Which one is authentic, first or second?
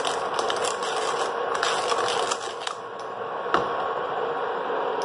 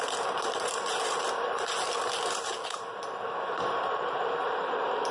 first